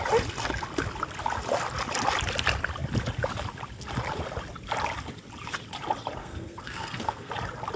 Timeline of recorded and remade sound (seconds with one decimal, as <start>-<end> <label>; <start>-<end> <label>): 0.0-6.2 recorded; 6.2-7.3 remade; 7.3-7.8 recorded